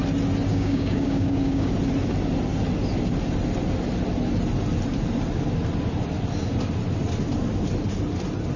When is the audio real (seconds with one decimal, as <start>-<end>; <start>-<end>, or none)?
0.0-0.5; 1.7-8.6